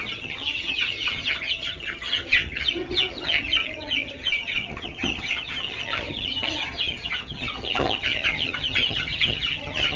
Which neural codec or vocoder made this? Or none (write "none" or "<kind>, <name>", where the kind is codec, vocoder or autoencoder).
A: vocoder, HiFi-GAN